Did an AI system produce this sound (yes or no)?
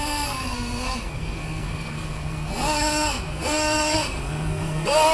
yes